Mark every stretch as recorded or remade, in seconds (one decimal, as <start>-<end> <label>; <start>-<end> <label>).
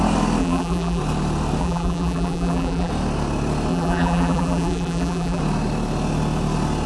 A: 0.0-0.4 recorded; 0.4-1.0 remade; 1.0-1.6 recorded; 1.6-2.9 remade; 2.9-3.7 recorded; 3.7-5.4 remade; 5.4-6.9 recorded